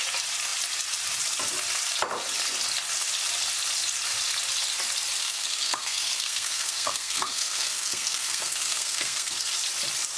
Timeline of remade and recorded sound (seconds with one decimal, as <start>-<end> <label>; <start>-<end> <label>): 0.0-5.2 recorded; 5.2-9.5 remade; 9.5-10.2 recorded